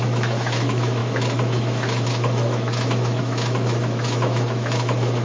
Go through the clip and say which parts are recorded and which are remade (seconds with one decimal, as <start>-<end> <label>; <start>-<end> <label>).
0.0-5.2 remade